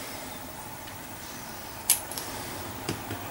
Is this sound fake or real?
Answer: fake